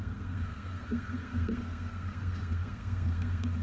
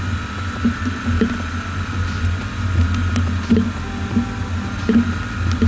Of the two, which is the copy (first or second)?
first